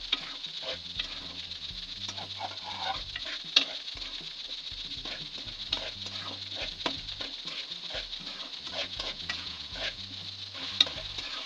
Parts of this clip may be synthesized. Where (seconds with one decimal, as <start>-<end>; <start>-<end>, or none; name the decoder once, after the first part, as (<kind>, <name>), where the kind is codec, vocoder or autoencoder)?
8.8-10.0 (vocoder, Vocos)